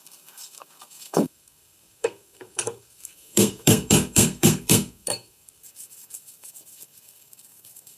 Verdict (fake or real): fake